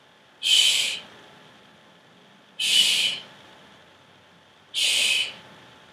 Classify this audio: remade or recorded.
recorded